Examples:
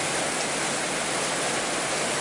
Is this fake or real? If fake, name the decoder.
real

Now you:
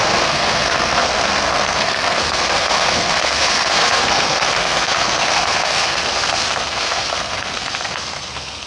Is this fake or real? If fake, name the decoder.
fake, codec, SNAC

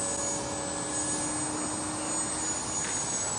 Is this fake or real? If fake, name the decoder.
real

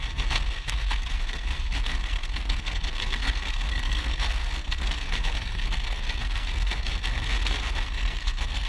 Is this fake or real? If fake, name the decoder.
fake, codec, SNAC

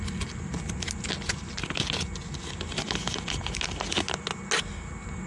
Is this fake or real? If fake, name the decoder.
real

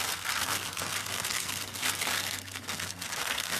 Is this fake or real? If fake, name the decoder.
fake, codec, SNAC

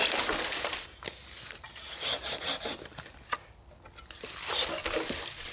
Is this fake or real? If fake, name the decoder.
real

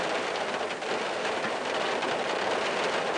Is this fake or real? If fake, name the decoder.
real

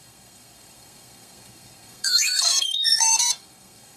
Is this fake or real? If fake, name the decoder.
fake, codec, SNAC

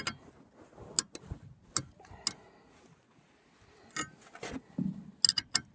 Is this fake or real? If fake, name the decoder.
real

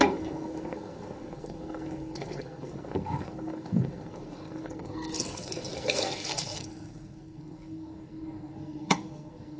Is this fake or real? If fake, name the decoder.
fake, codec, SNAC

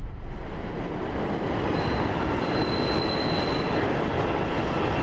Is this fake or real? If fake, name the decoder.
real